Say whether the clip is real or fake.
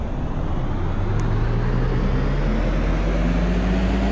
real